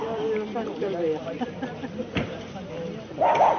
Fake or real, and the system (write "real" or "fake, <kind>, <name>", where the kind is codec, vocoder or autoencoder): fake, vocoder, BigVGAN v2